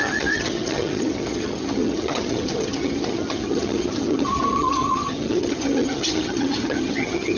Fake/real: fake